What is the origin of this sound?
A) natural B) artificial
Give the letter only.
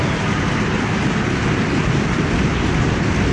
A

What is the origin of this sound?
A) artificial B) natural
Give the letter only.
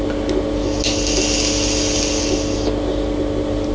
B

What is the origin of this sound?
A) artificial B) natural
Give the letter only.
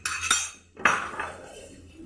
B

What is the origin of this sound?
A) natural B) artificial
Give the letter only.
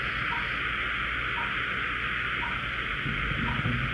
A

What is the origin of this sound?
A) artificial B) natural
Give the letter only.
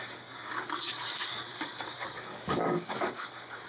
A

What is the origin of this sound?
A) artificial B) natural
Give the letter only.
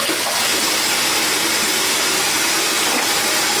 B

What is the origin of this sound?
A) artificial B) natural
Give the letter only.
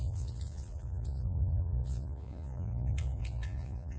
A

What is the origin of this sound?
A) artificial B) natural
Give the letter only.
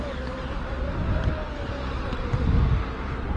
B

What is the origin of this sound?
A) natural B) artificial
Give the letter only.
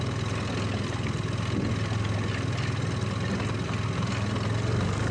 A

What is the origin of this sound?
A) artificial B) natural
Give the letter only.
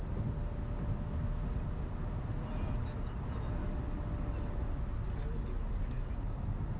B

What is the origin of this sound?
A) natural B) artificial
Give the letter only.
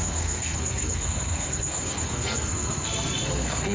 B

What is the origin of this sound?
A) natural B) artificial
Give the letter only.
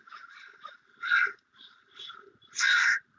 A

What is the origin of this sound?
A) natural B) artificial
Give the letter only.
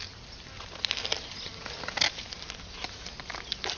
A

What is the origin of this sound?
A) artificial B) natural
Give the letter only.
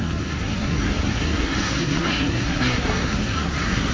A